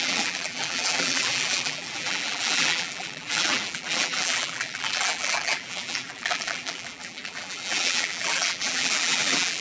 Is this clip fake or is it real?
fake